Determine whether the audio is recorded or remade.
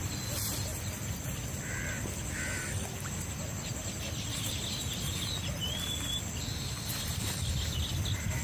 recorded